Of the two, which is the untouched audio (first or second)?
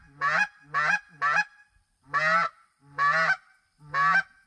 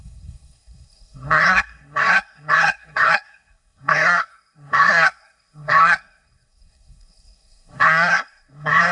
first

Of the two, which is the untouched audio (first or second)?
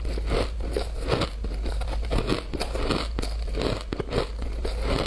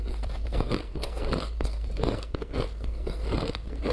first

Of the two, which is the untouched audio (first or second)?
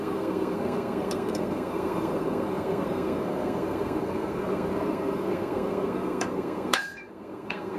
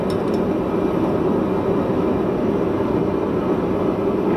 second